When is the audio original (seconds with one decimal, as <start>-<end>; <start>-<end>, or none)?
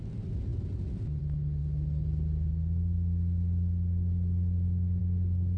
0.0-5.6